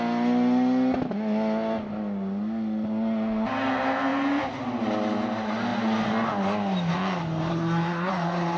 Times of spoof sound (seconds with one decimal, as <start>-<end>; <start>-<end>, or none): 7.5-8.1